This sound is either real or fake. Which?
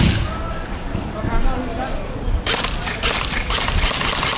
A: real